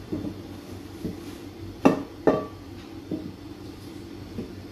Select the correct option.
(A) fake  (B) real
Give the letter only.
B